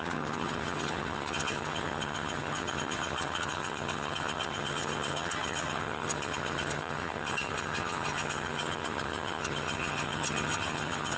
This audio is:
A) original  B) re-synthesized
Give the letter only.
B